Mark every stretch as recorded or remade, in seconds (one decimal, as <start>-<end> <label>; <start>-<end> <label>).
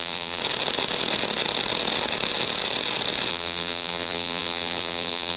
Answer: 0.0-0.4 remade; 0.4-3.3 recorded; 3.3-5.4 remade